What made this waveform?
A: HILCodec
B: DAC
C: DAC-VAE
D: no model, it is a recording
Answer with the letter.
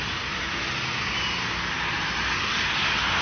D